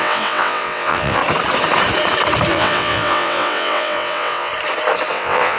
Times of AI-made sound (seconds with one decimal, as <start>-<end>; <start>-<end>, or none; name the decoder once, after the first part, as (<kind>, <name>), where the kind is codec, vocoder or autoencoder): 0.0-1.2 (vocoder, WaveNeXt); 2.5-4.5; 5.1-5.6